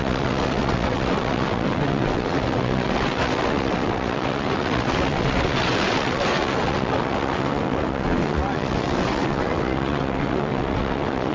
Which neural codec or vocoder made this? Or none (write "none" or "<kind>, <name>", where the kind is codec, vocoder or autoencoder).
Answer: vocoder, WaveNeXt